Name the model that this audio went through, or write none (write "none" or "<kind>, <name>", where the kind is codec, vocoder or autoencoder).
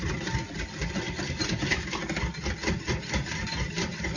none